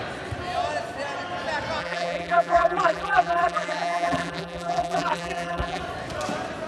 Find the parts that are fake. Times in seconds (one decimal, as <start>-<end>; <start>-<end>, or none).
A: 1.8-5.8